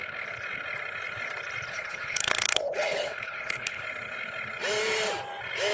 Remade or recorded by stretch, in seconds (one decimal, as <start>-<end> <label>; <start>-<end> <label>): 0.0-1.7 recorded; 1.7-3.8 remade; 3.8-5.7 recorded